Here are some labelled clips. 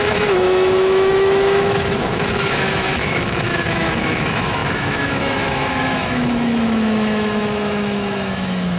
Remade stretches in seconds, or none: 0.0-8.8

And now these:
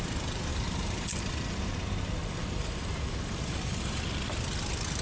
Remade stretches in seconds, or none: 0.5-1.2; 2.2-4.0